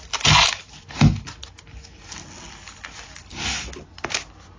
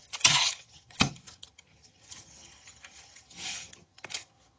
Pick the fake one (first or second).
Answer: second